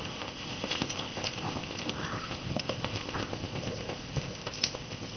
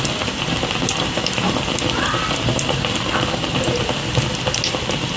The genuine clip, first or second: second